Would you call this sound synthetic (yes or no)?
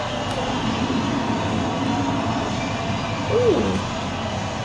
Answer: no